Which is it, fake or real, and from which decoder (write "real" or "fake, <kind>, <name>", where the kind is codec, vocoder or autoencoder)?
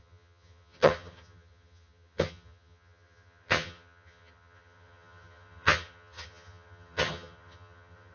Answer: fake, vocoder, HiFi-GAN